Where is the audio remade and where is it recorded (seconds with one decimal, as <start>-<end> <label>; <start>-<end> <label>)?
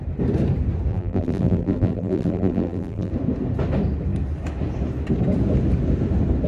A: 0.0-0.9 recorded; 0.9-3.1 remade; 3.1-6.5 recorded